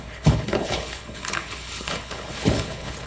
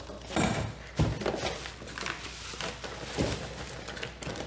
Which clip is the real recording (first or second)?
second